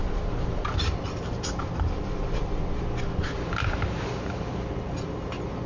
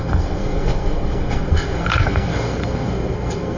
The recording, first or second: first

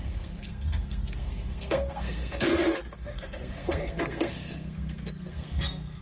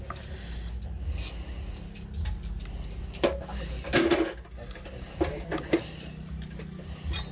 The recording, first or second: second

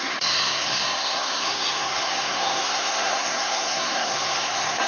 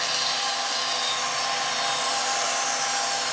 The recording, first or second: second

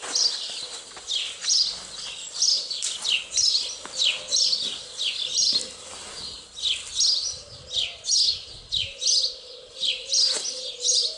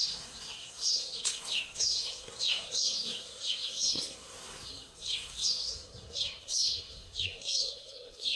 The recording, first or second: first